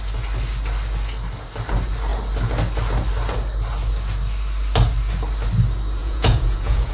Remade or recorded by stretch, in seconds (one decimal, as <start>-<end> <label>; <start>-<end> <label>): 0.0-6.0 recorded; 6.0-6.9 remade